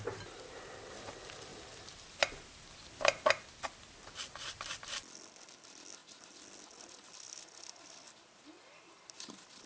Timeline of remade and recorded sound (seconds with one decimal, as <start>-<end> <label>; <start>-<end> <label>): 0.0-9.7 recorded